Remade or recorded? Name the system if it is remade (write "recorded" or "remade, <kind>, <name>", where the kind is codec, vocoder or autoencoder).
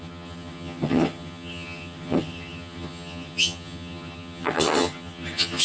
remade, vocoder, HiFi-GAN